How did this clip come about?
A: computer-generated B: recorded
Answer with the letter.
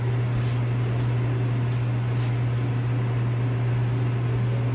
B